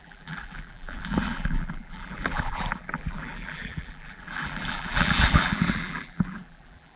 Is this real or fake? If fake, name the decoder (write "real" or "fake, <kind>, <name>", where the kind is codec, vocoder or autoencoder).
fake, vocoder, BigVGAN v2